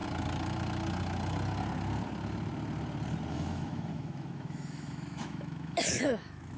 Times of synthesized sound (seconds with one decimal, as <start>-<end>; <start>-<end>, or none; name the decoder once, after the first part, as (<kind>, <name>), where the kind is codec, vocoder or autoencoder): 3.3-6.6 (autoencoder, DAC-VAE)